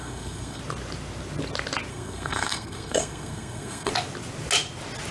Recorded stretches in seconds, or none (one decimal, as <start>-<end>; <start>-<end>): 0.6-1.9; 3.9-5.1